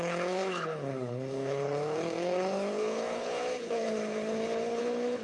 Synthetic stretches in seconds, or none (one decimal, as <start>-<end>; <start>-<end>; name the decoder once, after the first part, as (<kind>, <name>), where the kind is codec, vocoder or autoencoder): 0.0-5.2 (codec, HILCodec)